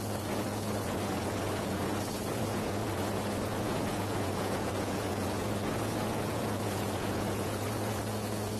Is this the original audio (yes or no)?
no